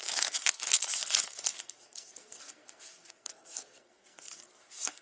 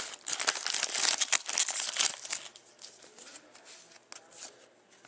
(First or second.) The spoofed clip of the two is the first